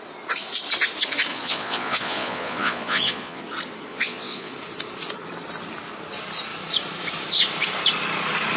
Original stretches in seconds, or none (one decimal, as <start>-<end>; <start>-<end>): 0.0-1.3; 3.4-3.9; 4.5-8.6